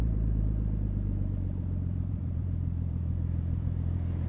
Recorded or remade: remade